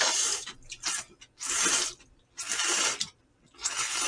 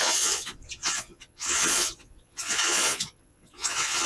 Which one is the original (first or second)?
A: first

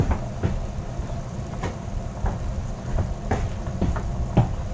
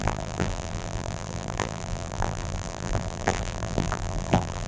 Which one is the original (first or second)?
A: first